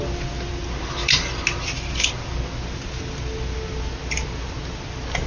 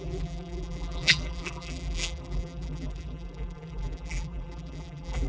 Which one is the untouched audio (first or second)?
first